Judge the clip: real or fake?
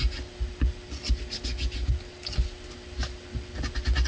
real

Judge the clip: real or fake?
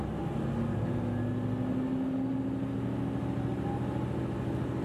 real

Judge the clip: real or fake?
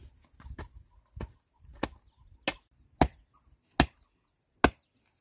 real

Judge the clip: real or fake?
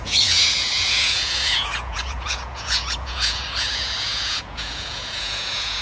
fake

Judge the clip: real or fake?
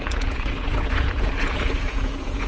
fake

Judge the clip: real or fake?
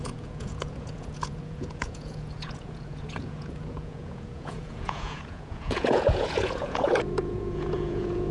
fake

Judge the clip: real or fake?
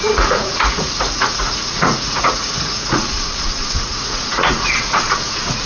fake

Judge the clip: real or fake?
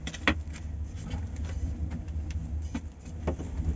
real